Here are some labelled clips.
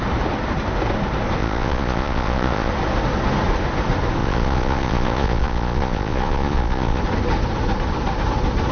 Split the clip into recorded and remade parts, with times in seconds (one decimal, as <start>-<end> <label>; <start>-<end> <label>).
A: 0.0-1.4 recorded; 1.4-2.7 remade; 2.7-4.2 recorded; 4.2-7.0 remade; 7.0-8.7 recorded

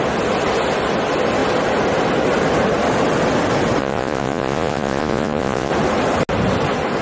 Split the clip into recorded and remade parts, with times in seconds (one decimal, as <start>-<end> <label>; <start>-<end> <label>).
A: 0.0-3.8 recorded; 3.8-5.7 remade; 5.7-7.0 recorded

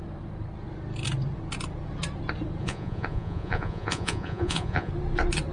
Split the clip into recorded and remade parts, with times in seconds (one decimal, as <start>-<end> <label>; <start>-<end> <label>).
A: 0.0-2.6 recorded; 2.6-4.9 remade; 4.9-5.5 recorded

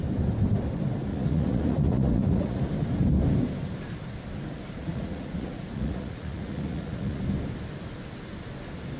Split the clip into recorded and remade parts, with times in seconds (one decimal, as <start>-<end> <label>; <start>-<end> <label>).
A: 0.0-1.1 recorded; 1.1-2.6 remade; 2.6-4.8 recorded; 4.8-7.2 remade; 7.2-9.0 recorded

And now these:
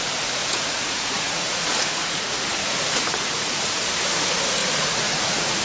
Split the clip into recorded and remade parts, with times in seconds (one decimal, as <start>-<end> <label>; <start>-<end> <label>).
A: 0.0-0.4 recorded; 0.4-3.8 remade; 3.8-4.6 recorded; 4.6-5.6 remade

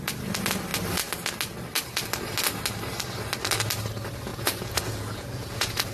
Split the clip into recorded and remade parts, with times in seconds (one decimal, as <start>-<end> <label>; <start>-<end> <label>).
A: 0.0-4.3 recorded; 4.3-5.9 remade

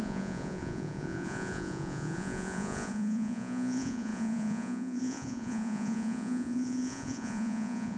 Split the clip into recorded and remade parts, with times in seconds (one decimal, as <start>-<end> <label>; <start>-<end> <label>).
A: 0.0-8.0 remade

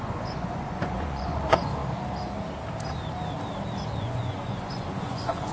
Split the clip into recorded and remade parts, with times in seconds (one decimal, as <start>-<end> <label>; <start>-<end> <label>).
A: 0.0-1.8 remade; 1.8-4.0 recorded; 4.0-5.5 remade